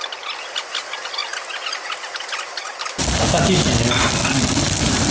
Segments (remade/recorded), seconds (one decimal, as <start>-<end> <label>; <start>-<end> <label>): 0.0-5.1 recorded